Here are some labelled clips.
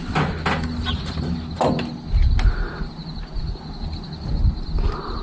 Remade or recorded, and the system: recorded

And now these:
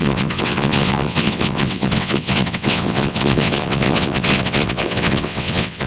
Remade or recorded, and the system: remade, vocoder, WaveNeXt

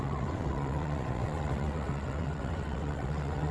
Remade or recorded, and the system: remade, vocoder, WaveNeXt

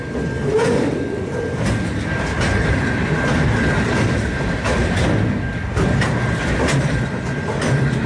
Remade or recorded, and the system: recorded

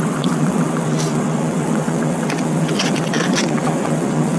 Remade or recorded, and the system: remade, vocoder, WaveNeXt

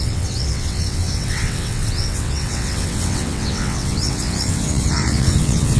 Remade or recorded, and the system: remade, vocoder, WaveNeXt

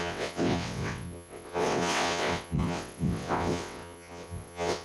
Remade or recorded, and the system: remade, vocoder, WaveNeXt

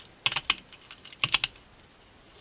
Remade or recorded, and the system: recorded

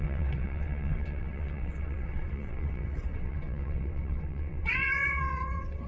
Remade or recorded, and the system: remade, vocoder, WaveNeXt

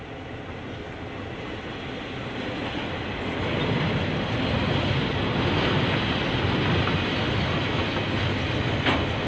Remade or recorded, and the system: recorded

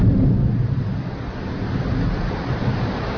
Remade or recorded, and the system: recorded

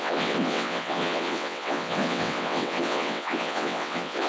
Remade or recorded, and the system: remade, vocoder, WaveNeXt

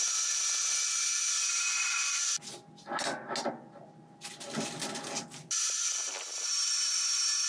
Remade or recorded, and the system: recorded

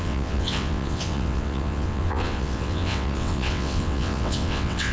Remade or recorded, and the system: remade, vocoder, WaveNeXt